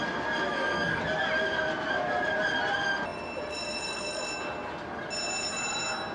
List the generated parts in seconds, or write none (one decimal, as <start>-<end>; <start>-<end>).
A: 0.5-1.0